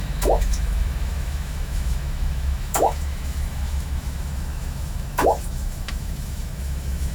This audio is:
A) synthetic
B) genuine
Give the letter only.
A